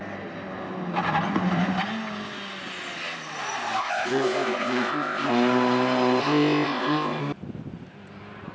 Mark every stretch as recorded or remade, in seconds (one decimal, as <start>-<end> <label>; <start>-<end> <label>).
0.0-3.8 recorded; 3.8-5.3 remade; 5.3-6.2 recorded; 6.2-7.2 remade; 7.2-8.5 recorded